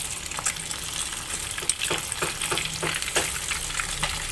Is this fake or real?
real